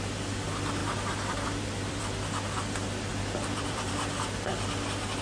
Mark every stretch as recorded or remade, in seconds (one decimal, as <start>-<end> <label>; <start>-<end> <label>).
0.0-0.8 recorded; 0.8-2.0 remade; 2.0-3.1 recorded; 3.1-4.0 remade; 4.0-5.2 recorded

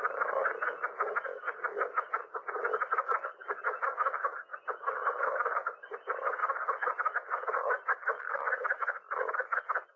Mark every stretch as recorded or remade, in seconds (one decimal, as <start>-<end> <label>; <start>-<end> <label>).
0.0-10.0 recorded

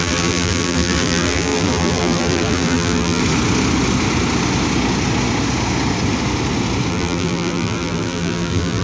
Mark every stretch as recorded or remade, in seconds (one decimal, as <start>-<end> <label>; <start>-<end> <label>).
0.0-3.2 remade; 3.2-6.9 recorded; 6.9-8.8 remade

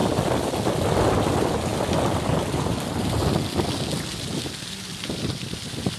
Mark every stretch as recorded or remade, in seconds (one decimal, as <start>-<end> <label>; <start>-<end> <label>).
0.0-6.0 recorded

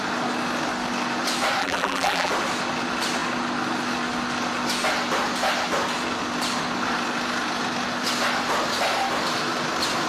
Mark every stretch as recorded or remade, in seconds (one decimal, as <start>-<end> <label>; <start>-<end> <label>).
0.0-1.6 recorded; 1.6-2.3 remade; 2.3-10.1 recorded